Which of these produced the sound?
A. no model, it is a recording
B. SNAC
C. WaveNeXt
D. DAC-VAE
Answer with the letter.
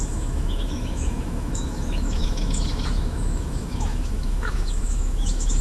D